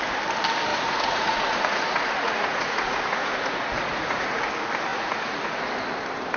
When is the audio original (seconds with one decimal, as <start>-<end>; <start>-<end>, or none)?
0.0-0.7; 4.5-4.9; 5.7-6.4